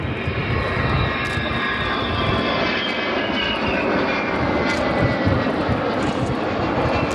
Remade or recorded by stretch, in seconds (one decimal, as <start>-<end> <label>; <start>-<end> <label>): 0.0-7.1 recorded